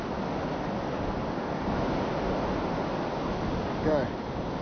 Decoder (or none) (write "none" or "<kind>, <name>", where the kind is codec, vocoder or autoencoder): none